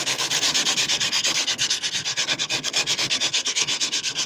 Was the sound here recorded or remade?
remade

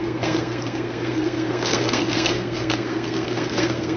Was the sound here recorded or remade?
remade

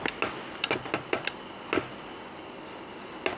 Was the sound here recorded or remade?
recorded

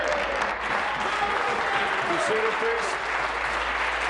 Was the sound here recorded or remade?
recorded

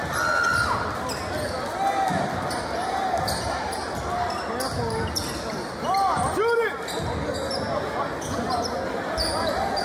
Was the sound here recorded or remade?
recorded